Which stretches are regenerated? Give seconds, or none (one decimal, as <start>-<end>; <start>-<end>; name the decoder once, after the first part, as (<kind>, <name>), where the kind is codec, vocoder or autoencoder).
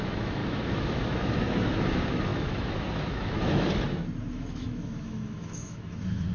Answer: 0.0-3.7 (autoencoder, DAC-VAE); 4.3-6.3